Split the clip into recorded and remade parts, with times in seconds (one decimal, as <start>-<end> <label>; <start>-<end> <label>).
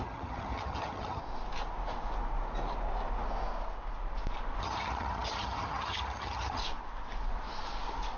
0.0-1.2 remade; 1.2-4.6 recorded; 4.6-6.6 remade; 6.6-8.2 recorded